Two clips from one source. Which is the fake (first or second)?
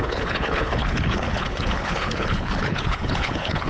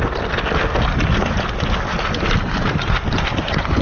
first